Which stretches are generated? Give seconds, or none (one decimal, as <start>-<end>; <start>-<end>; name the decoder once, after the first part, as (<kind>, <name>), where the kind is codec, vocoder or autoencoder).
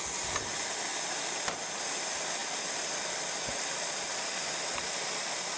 none